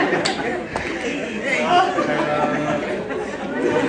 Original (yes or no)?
yes